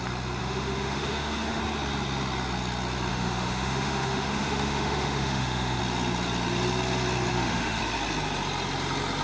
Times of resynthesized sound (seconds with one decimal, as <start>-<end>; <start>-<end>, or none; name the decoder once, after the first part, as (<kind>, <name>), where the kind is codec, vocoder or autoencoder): 0.4-1.6 (autoencoder, DAC-VAE); 3.1-5.8; 7.3-7.8